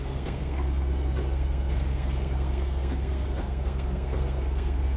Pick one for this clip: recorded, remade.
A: remade